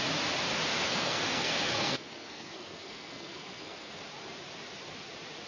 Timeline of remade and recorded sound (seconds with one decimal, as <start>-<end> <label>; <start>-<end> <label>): 0.0-0.7 recorded; 0.7-4.0 remade; 4.0-5.5 recorded